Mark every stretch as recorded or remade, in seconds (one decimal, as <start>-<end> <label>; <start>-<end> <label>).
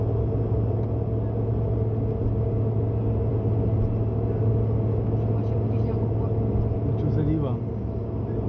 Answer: 0.0-8.5 recorded